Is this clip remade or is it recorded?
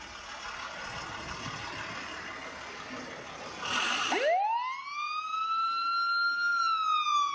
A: recorded